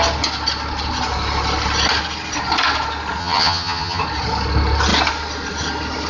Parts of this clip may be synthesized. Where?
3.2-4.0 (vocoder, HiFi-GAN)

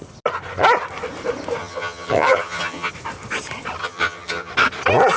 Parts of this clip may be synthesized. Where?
1.6-2.9 (vocoder, HiFi-GAN); 3.8-4.5

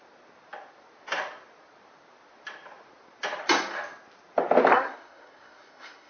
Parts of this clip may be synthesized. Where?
4.7-6.1 (codec, SNAC)

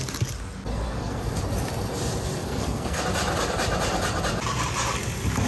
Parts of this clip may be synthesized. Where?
0.7-1.4 (codec, SNAC); 2.4-3.0